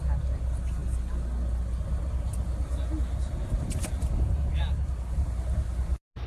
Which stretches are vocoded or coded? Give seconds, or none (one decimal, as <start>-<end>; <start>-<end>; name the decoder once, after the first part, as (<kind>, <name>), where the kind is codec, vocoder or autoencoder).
none